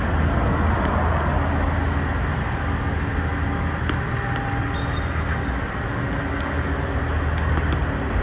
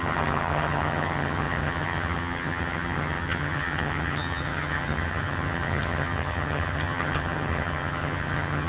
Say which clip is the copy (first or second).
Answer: second